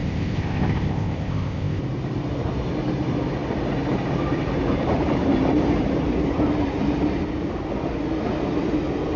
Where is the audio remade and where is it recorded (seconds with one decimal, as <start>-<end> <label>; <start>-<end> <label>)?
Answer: 0.0-1.8 remade; 1.8-9.2 recorded